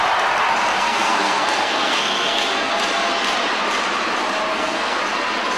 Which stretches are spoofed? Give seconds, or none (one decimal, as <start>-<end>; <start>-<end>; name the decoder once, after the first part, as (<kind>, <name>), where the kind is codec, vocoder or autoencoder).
0.7-2.7 (codec, SNAC); 4.5-5.0